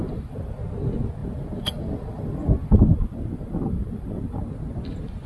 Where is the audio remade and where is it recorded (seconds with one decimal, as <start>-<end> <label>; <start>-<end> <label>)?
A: 0.0-0.6 remade; 0.6-1.2 recorded; 1.2-4.4 remade; 4.4-5.3 recorded